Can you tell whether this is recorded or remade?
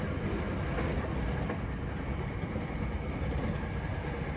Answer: recorded